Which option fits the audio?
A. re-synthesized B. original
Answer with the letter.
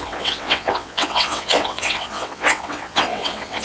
A